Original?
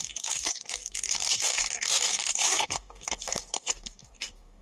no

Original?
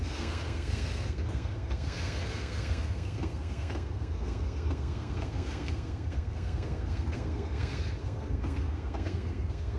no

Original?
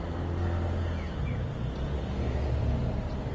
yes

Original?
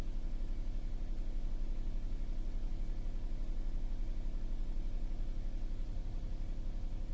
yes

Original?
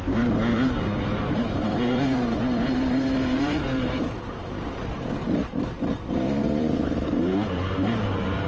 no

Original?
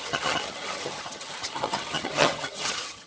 no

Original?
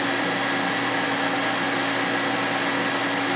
yes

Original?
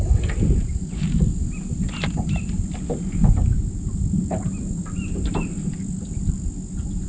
yes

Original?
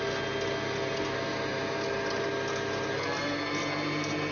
yes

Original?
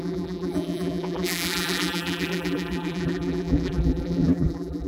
no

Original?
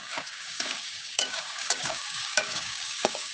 no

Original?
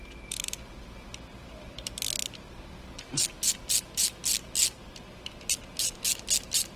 yes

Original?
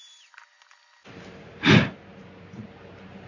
yes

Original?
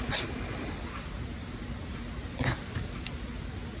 yes